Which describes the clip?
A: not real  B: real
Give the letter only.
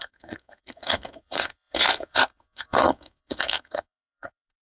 A